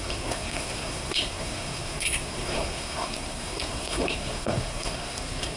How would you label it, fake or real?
fake